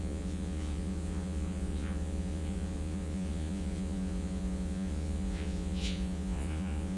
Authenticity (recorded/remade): remade